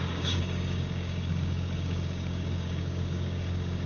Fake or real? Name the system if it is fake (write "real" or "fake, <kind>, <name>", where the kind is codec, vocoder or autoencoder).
fake, codec, DAC